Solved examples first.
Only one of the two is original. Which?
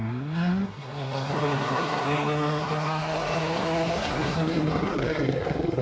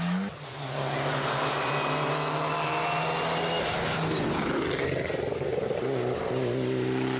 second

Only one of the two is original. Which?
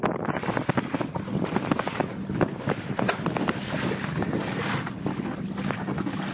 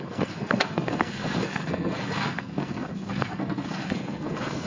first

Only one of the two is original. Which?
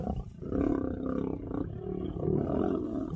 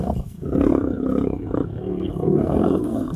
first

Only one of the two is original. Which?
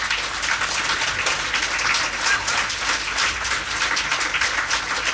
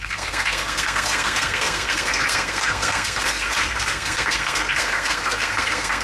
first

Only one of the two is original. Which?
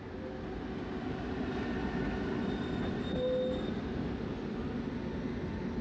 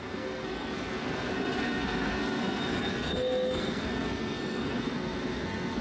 first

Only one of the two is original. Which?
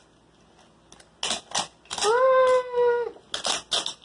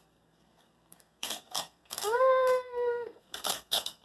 first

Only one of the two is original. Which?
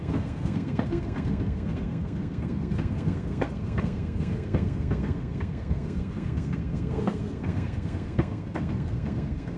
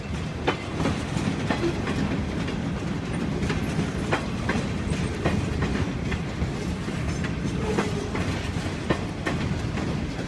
second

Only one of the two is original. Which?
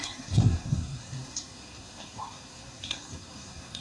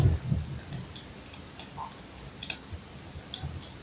second